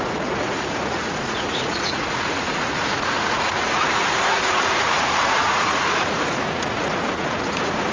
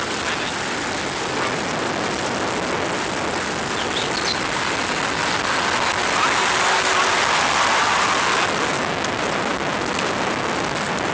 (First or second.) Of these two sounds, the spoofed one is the first